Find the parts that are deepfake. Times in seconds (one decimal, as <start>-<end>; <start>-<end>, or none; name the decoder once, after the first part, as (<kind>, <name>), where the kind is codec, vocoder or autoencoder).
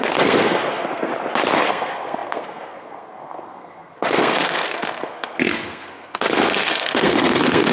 0.0-1.1 (codec, SNAC); 1.7-7.7